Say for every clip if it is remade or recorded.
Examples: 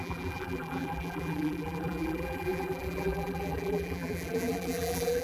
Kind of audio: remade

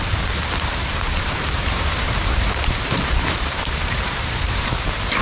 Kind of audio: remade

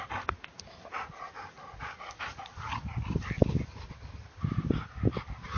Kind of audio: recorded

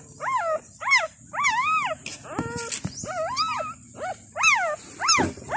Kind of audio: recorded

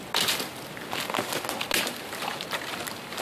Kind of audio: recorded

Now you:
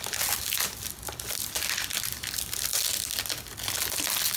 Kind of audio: recorded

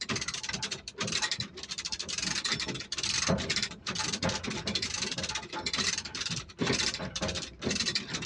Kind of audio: remade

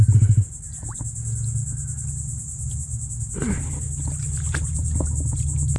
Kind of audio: recorded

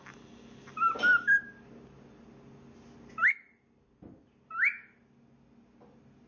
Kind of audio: recorded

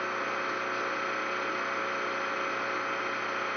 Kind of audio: recorded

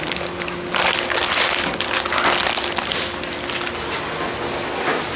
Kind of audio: recorded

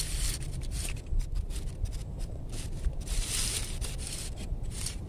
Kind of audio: remade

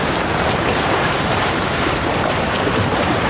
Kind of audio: remade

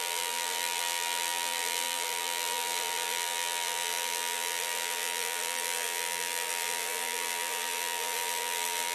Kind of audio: remade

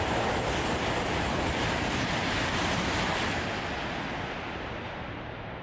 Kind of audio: recorded